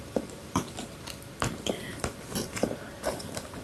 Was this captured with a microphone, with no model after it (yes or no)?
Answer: no